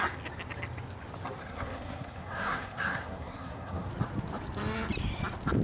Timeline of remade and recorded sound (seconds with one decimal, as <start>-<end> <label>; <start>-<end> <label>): 0.0-1.4 recorded; 1.4-3.9 remade; 3.9-5.6 recorded